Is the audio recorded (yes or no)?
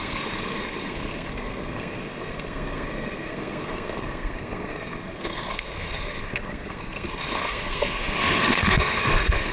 no